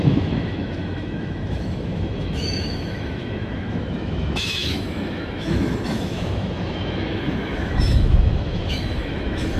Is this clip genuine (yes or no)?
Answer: no